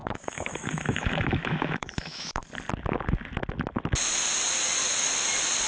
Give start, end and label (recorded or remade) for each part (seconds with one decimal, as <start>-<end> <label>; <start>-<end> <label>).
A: 0.0-2.4 remade; 2.4-5.7 recorded